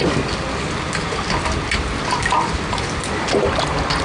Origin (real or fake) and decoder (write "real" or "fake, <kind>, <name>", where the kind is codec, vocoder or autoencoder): real